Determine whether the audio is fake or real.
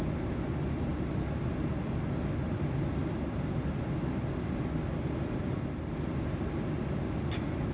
real